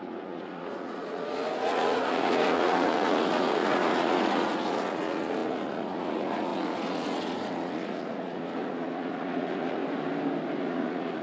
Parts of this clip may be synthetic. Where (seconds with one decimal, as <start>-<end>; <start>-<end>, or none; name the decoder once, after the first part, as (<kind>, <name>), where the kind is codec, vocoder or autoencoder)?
0.0-9.8 (vocoder, Vocos); 10.6-11.2